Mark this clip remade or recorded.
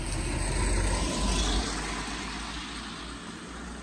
recorded